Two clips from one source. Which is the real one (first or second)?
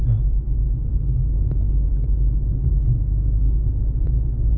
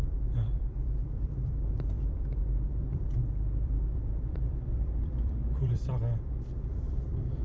first